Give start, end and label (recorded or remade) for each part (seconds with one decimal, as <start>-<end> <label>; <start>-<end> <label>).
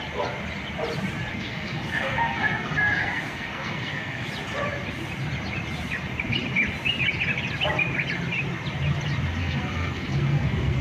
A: 0.0-1.3 recorded; 1.3-4.3 remade; 4.3-9.4 recorded; 9.4-10.8 remade